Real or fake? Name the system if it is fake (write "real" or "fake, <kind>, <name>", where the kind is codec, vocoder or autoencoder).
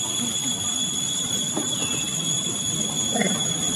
real